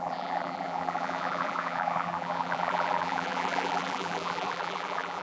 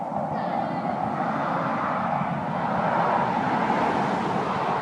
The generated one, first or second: first